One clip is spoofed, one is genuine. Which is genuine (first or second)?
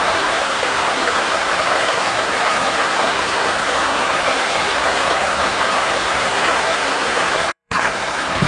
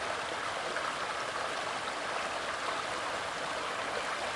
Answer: second